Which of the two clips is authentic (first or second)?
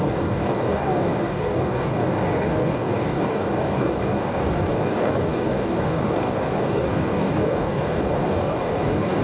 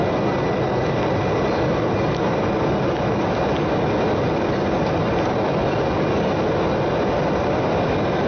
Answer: second